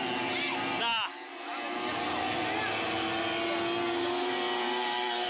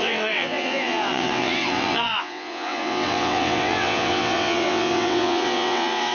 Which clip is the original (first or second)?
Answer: first